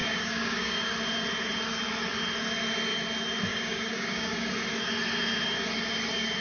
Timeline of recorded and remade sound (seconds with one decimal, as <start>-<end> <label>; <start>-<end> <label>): 0.0-0.8 remade; 0.8-3.5 recorded; 3.5-4.5 remade; 4.5-6.4 recorded